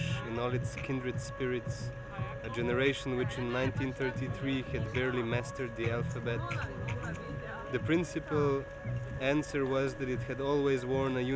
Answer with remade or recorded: recorded